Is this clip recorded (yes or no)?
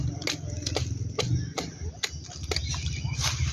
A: yes